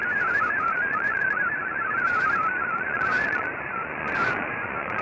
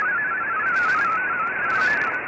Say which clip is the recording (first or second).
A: second